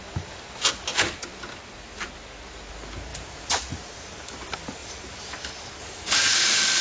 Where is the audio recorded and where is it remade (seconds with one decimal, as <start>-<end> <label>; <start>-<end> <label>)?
0.0-3.1 recorded; 3.1-4.3 remade; 4.3-4.8 recorded; 4.8-6.8 remade